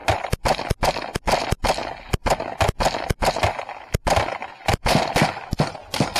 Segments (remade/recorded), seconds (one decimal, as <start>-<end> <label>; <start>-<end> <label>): 0.0-1.8 remade; 1.8-4.5 recorded; 4.5-6.2 remade